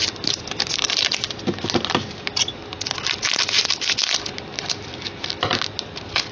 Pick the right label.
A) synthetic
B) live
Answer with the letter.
B